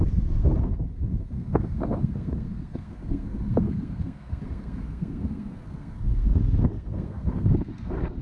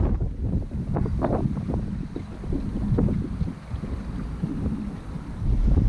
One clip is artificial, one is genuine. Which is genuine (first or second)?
second